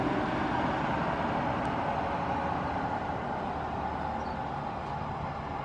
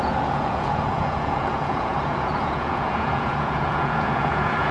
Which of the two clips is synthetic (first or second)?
second